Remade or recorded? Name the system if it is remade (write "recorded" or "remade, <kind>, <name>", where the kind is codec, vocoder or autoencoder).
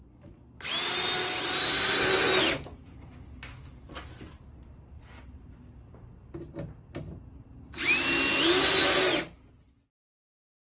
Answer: recorded